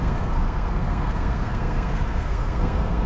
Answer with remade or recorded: remade